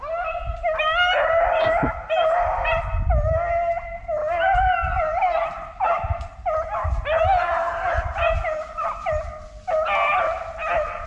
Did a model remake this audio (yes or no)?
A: no